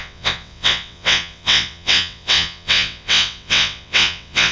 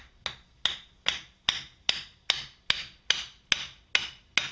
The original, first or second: second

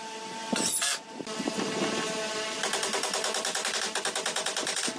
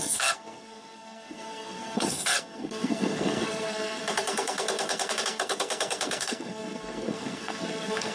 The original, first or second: first